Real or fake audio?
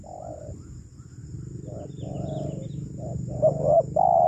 real